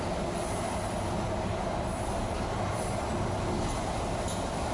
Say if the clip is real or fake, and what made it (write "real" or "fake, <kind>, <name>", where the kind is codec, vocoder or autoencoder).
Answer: real